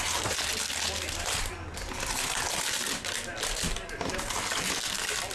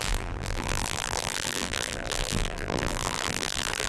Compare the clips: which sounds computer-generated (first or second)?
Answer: second